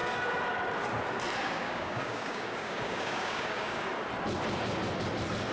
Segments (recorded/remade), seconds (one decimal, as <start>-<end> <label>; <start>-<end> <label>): 0.0-1.4 recorded; 1.4-3.9 remade; 3.9-5.5 recorded